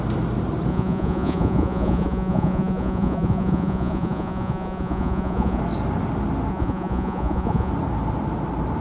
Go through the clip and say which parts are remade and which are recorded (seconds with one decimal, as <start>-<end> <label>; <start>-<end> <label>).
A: 0.0-0.7 recorded; 0.7-5.6 remade; 5.6-6.5 recorded; 6.5-7.7 remade; 7.7-8.8 recorded